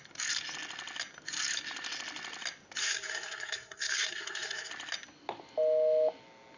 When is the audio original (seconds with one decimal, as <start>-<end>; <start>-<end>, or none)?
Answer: 0.0-2.8; 4.7-6.6